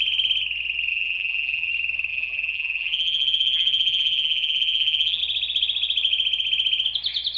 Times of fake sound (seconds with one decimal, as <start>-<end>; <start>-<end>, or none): 0.9-1.7; 2.1-5.2